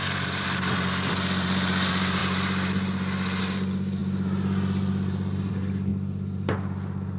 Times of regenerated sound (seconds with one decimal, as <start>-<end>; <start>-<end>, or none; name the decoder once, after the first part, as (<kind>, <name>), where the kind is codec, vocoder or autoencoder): 0.0-2.2 (vocoder, BigVGAN v2); 3.4-7.2